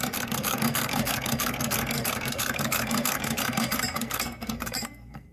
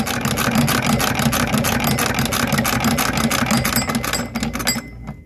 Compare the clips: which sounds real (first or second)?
second